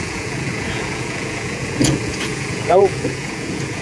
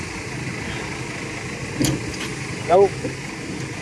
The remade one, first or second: first